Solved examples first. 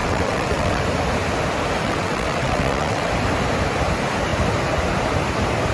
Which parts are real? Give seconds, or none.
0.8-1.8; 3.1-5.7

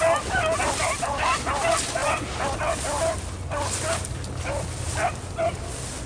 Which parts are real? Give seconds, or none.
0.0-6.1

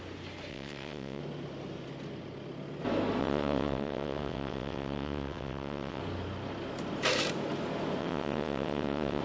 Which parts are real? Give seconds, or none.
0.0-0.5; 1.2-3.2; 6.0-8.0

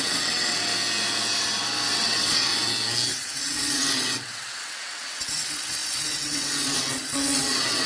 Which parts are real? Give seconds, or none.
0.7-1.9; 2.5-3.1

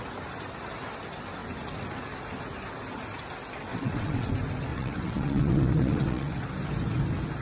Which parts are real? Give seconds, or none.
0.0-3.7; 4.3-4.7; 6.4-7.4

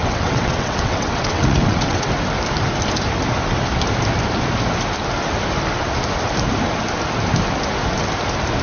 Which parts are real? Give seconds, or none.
2.1-8.6

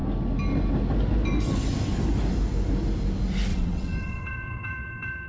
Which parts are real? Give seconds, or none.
0.0-3.5

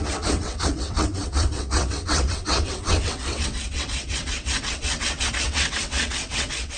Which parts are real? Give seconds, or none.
none